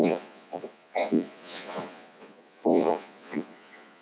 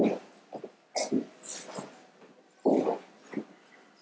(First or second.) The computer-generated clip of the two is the first